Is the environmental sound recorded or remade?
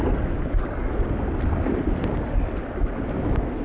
recorded